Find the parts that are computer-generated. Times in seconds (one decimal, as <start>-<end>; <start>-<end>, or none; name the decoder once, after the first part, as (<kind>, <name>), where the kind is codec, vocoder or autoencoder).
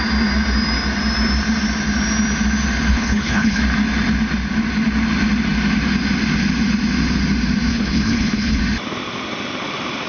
2.9-3.6 (codec, HILCodec); 7.7-8.6